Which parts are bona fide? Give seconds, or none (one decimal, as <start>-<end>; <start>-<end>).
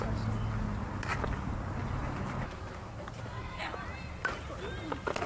0.0-5.3